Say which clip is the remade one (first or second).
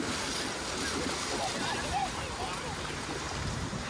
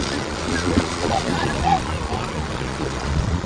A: second